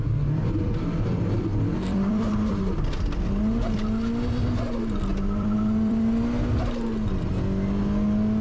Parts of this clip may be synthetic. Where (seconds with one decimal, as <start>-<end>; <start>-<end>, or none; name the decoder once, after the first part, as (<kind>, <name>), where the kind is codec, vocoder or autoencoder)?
0.4-2.8 (vocoder, BigVGAN v2); 5.1-6.2